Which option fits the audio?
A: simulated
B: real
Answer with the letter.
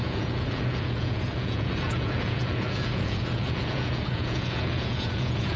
A